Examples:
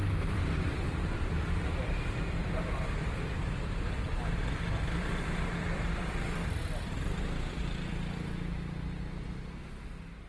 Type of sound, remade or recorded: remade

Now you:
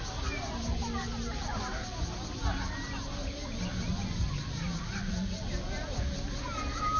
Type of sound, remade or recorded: recorded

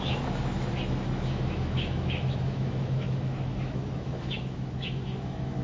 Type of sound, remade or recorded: remade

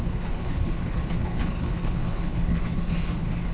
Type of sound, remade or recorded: remade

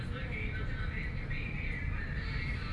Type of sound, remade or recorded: recorded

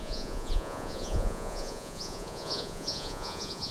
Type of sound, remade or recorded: remade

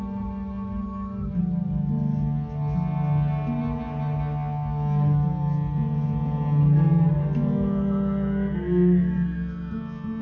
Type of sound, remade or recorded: recorded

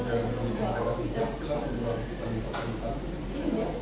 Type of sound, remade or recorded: recorded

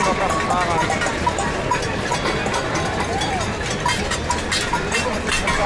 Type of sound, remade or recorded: remade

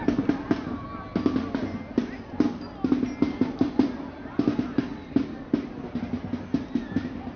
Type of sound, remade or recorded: recorded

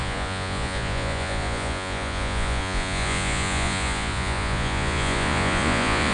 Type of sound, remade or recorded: remade